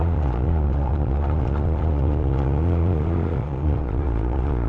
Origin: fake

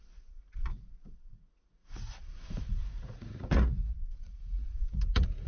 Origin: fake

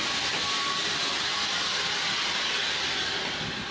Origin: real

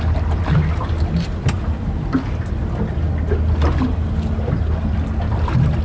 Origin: real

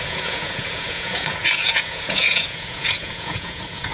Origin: fake